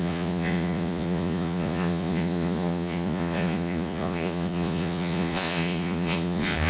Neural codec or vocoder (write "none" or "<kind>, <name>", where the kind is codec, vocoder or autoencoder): vocoder, Vocos